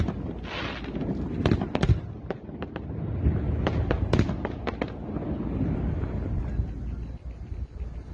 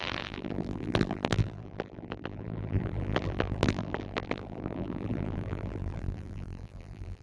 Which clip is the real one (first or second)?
first